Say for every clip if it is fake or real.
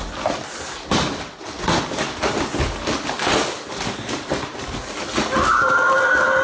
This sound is real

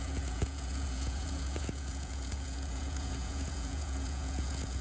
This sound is fake